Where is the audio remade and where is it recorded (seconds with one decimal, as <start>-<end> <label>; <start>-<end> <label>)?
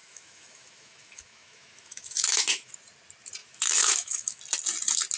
0.0-2.7 remade; 2.7-3.4 recorded; 3.4-4.4 remade; 4.4-5.2 recorded